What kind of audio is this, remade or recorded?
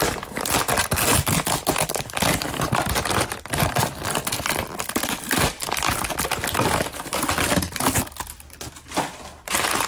recorded